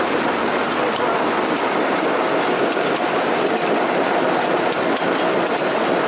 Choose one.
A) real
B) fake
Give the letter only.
A